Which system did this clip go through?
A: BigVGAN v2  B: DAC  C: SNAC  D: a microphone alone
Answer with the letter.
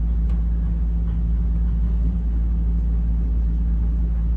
D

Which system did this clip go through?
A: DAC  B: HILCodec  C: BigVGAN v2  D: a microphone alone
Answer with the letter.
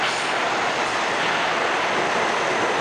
D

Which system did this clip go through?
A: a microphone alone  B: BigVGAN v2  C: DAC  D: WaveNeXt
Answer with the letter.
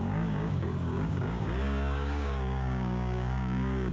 C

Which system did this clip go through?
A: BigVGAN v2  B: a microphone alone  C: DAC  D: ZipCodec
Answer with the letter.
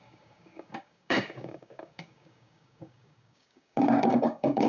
C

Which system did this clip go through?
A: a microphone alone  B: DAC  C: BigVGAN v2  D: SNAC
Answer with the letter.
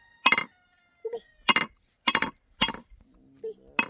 A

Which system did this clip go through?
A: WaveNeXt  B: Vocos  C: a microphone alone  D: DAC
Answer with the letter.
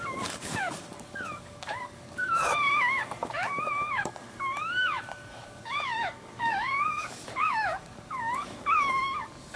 D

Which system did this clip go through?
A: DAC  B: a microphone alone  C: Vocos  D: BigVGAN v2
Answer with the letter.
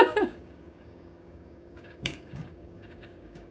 A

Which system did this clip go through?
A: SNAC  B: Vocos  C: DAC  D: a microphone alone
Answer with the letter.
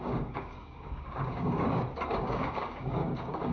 C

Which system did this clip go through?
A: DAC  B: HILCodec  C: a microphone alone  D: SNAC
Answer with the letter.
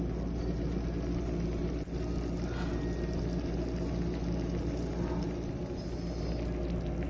C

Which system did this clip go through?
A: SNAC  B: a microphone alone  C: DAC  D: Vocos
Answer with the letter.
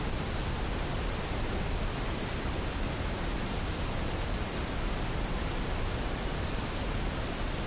B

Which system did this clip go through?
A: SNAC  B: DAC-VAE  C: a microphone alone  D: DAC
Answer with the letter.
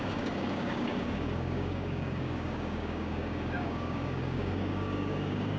D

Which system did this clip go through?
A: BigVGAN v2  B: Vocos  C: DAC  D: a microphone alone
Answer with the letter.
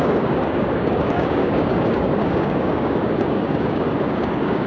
C